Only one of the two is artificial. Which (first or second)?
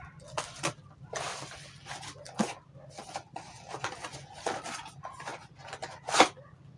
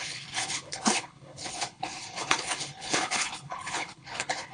second